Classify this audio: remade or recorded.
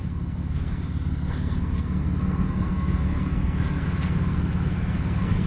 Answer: remade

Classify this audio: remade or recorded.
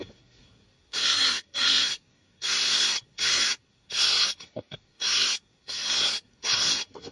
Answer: remade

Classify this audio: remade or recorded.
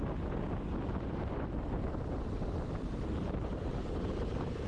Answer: recorded